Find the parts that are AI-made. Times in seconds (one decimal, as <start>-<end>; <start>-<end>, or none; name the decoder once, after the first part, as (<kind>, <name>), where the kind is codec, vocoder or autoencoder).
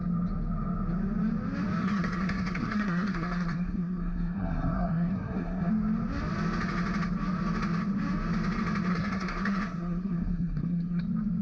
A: 1.8-5.7 (codec, SNAC); 8.9-11.0